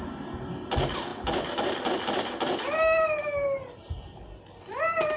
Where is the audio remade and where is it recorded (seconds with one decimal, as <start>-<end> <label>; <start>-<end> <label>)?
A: 0.0-5.2 recorded